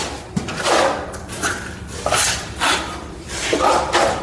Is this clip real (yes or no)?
yes